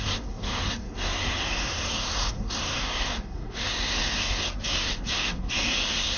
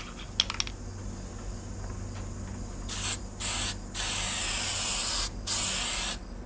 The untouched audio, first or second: second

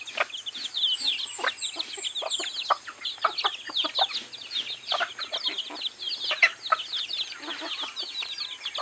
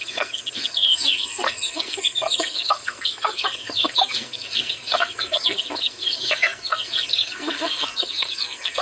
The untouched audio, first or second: first